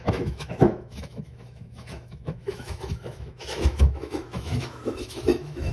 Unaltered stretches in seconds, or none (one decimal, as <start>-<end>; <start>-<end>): none

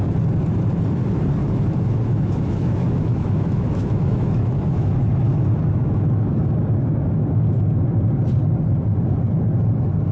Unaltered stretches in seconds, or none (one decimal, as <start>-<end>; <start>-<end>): 0.0-1.4; 6.5-10.1

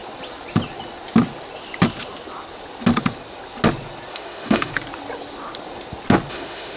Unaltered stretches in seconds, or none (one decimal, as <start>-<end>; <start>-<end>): 0.0-4.1; 4.7-6.3

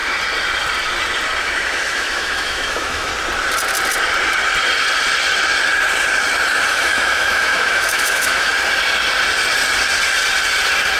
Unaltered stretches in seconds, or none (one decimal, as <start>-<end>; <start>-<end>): 0.0-1.4; 3.1-6.7; 8.5-11.0

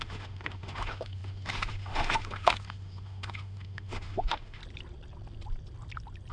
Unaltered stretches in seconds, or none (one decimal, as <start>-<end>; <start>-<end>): 4.6-6.3

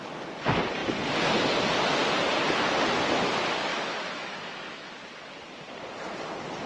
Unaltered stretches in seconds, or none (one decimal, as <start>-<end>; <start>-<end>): 0.0-3.7; 4.9-6.7